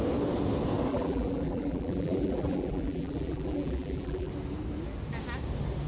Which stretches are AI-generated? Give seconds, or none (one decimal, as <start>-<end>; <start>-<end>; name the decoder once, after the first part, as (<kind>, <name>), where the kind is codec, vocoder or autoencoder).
0.9-4.3 (vocoder, BigVGAN v2)